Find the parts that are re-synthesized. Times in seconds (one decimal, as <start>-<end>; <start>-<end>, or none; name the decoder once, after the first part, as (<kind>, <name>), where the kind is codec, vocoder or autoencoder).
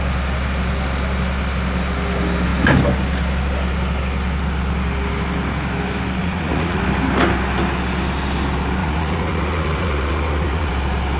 6.2-6.8 (vocoder, Vocos); 8.8-10.7